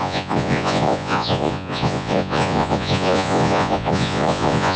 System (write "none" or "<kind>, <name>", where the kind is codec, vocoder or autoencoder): vocoder, Vocos